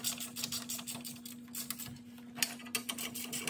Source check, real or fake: real